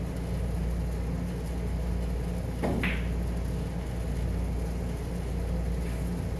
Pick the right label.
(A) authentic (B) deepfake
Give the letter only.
A